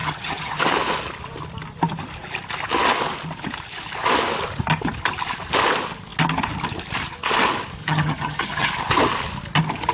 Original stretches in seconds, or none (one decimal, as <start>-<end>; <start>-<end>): 0.6-7.8; 8.7-9.9